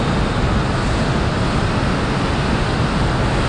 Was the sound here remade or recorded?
recorded